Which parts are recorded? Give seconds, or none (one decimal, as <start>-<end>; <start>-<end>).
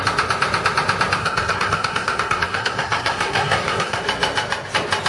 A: 0.0-1.2; 4.0-5.1